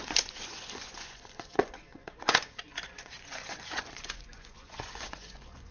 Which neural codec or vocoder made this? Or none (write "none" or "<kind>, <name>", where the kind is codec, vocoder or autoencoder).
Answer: vocoder, Vocos